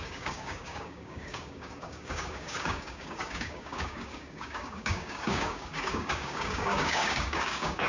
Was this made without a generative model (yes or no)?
no